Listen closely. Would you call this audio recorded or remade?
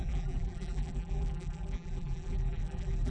remade